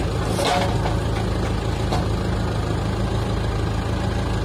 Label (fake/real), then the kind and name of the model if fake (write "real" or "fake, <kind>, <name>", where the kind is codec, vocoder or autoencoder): real